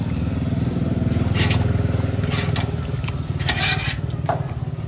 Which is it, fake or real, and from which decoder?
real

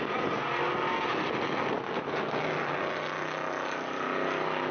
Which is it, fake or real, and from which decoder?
real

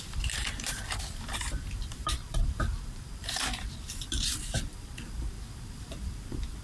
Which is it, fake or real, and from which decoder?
fake, vocoder, BigVGAN v2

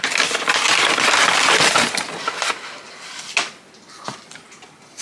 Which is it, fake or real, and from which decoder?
real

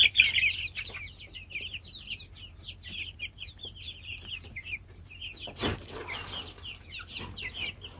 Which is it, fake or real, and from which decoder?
real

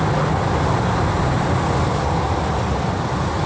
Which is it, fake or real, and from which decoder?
real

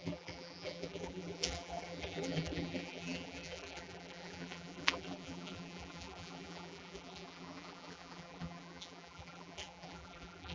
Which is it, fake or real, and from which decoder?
fake, vocoder, BigVGAN v2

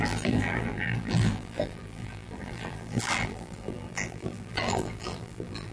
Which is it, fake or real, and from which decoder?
fake, vocoder, BigVGAN v2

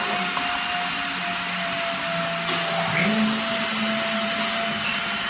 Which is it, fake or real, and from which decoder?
real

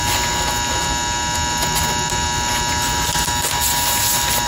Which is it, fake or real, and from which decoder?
real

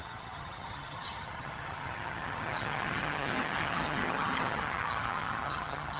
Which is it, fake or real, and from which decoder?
fake, vocoder, HiFi-GAN